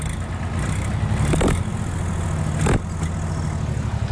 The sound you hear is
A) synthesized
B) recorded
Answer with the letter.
B